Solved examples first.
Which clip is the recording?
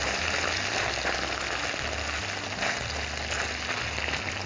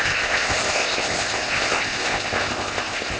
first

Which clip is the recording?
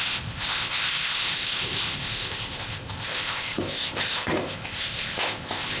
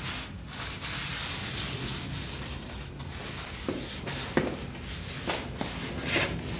second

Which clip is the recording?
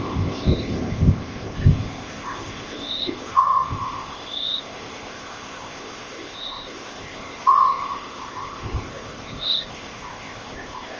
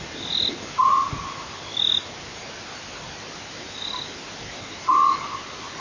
second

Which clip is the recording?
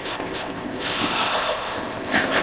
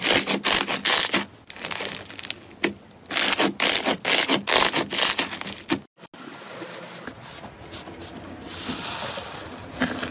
second